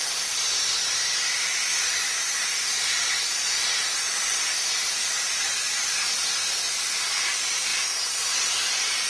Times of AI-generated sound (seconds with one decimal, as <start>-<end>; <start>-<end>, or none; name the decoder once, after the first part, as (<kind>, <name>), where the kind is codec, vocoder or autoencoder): none